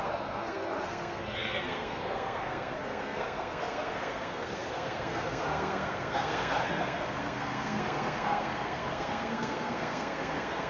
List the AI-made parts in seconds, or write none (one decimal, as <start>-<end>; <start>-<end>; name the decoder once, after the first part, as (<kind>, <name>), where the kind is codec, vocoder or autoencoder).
0.0-10.7 (codec, SNAC)